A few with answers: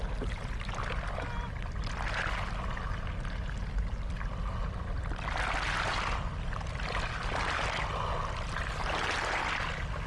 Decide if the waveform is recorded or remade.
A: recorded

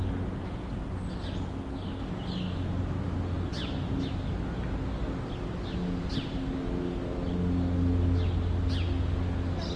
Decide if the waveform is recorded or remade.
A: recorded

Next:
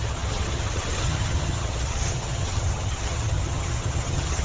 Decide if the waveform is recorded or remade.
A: remade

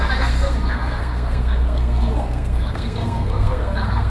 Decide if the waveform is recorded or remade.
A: remade